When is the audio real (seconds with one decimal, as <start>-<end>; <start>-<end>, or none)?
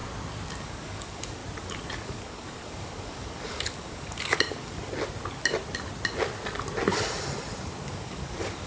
0.0-0.6; 1.4-1.9; 4.9-7.8